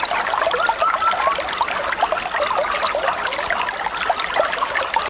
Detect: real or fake fake